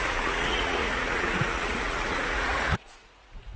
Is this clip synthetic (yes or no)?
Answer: yes